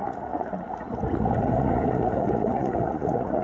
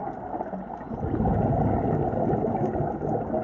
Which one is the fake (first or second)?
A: first